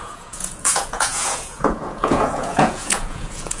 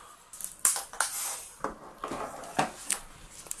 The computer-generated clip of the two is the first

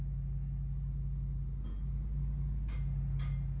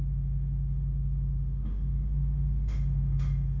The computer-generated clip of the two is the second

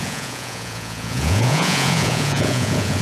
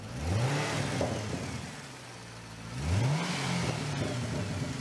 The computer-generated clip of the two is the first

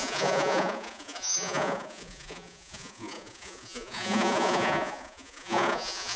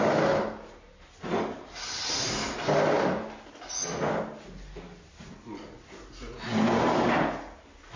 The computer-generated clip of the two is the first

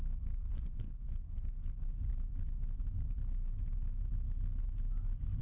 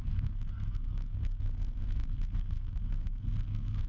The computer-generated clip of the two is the second